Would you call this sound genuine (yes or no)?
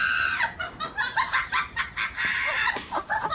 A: no